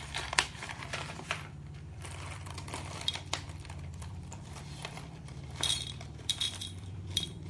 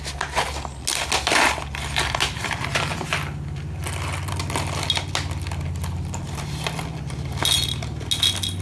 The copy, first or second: first